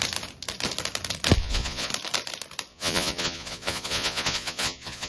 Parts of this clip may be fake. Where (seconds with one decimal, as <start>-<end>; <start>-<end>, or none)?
1.4-1.9; 2.7-5.1